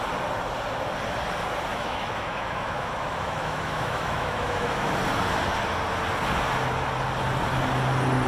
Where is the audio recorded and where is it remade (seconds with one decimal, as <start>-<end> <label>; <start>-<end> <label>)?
0.0-1.7 recorded; 1.7-4.9 remade; 4.9-8.3 recorded